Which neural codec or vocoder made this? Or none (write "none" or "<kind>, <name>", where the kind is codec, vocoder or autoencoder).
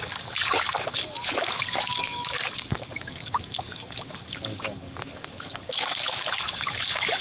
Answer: codec, DAC